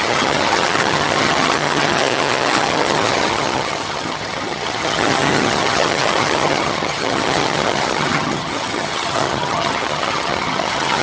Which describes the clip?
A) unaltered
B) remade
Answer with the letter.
B